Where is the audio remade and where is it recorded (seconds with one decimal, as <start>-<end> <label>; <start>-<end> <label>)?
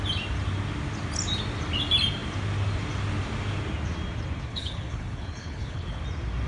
0.0-4.5 recorded; 4.5-6.0 remade; 6.0-6.5 recorded